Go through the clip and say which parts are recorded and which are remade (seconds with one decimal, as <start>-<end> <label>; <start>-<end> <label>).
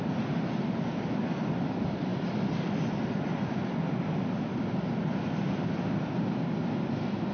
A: 0.0-7.3 recorded